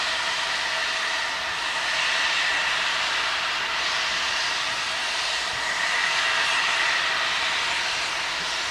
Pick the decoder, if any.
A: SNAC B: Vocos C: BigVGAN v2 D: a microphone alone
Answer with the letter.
D